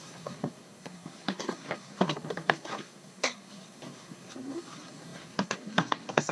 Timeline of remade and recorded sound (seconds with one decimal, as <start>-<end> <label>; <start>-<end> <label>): 0.0-6.3 remade